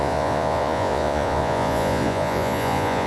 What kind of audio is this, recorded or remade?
remade